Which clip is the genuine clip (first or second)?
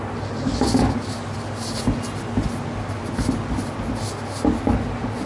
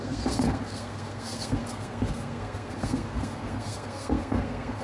first